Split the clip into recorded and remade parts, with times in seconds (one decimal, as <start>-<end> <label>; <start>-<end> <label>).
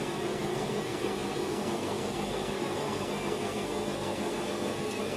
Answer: 0.0-5.2 remade